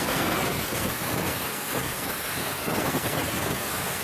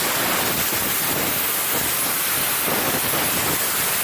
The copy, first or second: first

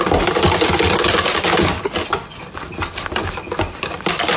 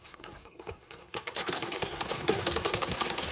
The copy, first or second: second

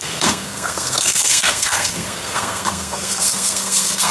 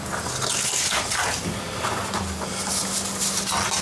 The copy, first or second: first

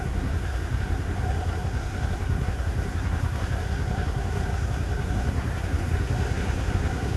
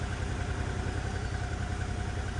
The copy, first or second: first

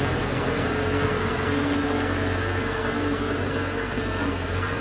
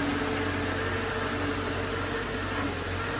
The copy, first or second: first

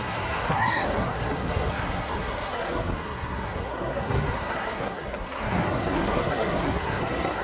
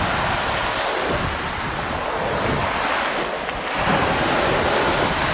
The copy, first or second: first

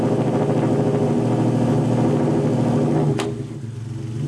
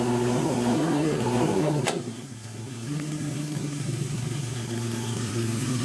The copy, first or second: second